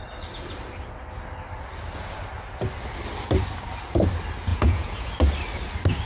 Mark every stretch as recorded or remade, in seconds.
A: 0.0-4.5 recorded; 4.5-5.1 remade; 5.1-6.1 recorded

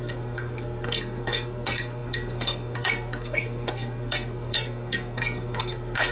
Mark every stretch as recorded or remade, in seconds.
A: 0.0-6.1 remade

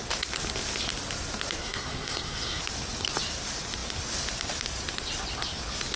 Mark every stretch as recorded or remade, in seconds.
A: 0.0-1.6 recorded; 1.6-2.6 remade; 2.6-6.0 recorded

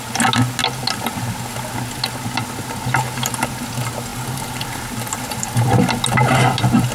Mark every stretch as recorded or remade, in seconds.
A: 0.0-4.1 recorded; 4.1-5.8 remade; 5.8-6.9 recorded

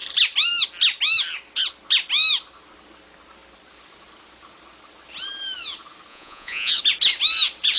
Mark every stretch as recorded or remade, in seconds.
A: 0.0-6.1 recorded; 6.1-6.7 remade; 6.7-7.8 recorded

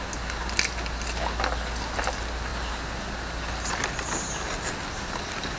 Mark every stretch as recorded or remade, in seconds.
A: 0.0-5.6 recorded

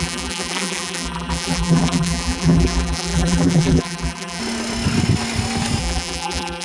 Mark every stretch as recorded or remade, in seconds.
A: 0.0-4.4 remade; 4.4-5.8 recorded; 5.8-6.6 remade

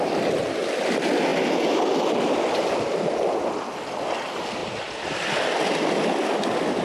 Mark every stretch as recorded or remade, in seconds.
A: 0.0-6.8 recorded